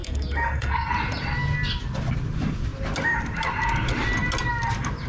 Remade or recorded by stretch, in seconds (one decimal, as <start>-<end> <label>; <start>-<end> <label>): 0.0-0.9 remade; 0.9-5.1 recorded